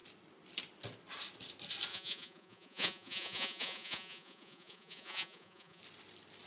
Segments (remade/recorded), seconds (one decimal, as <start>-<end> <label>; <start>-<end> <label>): 0.0-1.9 recorded; 1.9-5.8 remade; 5.8-6.5 recorded